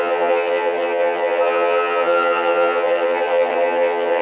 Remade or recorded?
remade